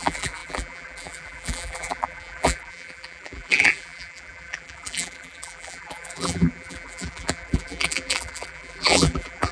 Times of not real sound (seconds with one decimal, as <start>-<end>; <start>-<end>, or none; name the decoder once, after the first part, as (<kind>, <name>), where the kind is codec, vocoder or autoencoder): 0.0-9.5 (vocoder, BigVGAN v2)

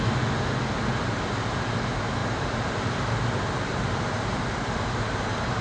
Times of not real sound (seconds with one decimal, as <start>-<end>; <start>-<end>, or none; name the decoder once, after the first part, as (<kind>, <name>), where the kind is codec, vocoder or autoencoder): 2.2-5.6 (vocoder, BigVGAN v2)

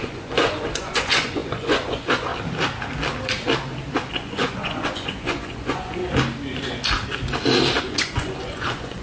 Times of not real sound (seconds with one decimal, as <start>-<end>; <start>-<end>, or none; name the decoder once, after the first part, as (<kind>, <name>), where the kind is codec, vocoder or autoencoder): 0.0-2.3 (vocoder, Vocos); 4.1-6.0; 7.8-9.0

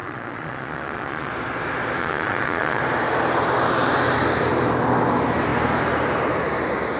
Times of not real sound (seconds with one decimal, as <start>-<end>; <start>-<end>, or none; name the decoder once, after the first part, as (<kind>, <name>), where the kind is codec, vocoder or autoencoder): 0.0-1.3 (vocoder, Vocos); 2.0-2.8

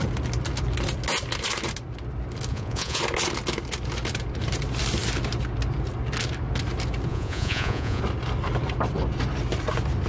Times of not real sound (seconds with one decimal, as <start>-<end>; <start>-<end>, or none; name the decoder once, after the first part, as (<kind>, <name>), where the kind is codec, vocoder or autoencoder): 2.5-3.0 (vocoder, Vocos); 7.1-8.0

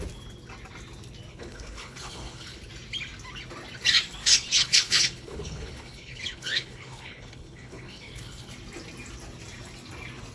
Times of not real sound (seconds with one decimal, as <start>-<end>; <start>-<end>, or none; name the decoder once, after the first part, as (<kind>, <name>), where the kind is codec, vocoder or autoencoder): 1.3-2.6 (codec, HILCodec); 4.2-8.5

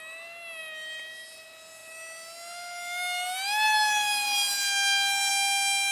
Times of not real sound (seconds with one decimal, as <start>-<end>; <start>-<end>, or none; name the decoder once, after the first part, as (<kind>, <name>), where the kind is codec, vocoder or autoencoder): none